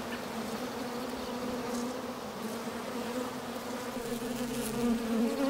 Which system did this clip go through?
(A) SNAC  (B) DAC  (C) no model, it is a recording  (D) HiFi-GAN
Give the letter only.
C